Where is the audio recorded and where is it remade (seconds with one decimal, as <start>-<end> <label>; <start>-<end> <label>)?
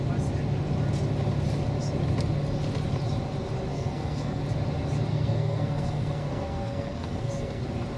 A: 0.0-3.7 recorded; 3.7-4.4 remade; 4.4-5.1 recorded; 5.1-7.6 remade; 7.6-8.0 recorded